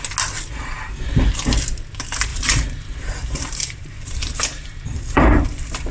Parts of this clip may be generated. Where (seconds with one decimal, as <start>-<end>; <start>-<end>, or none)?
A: 2.3-5.9